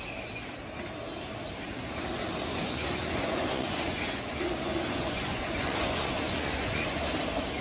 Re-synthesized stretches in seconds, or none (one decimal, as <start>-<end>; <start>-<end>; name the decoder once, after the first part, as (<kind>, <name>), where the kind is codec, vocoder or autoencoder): 2.5-7.1 (vocoder, Vocos)